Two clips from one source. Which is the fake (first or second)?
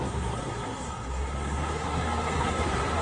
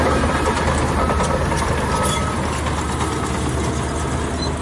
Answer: first